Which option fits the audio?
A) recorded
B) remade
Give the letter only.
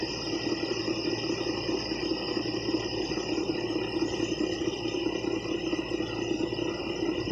A